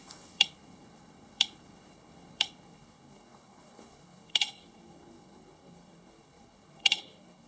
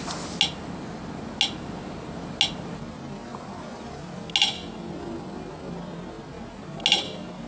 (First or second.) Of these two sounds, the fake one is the first